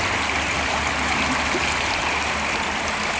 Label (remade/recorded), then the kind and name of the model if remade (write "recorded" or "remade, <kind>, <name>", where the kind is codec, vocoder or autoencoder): recorded